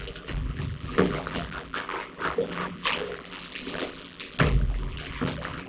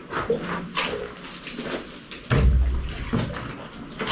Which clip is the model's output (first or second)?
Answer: first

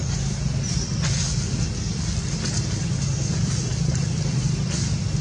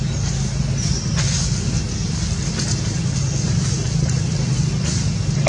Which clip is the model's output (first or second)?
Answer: first